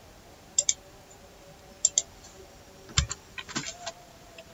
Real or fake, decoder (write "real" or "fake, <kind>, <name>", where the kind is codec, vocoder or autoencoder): real